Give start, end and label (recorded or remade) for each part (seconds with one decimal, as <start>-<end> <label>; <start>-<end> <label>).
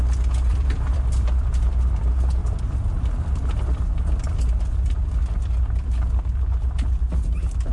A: 0.0-0.5 recorded; 0.5-1.7 remade; 1.7-2.4 recorded; 2.4-4.3 remade; 4.3-7.7 recorded